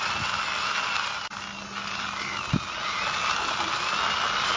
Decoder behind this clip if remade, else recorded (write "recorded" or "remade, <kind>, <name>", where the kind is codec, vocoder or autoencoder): recorded